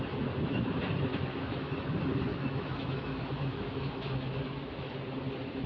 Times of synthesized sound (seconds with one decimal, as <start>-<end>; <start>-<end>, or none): 1.1-1.7; 2.3-4.9